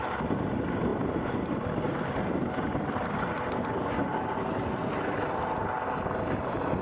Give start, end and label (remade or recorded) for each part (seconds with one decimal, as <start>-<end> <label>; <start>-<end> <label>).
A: 0.0-6.8 recorded